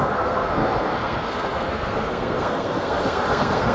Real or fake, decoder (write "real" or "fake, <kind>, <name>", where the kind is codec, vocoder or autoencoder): fake, codec, SNAC